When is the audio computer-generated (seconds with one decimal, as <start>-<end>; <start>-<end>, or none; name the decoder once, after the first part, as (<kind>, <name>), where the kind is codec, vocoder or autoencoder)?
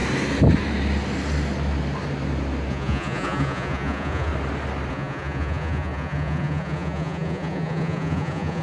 2.7-4.3 (vocoder, Vocos); 4.9-8.6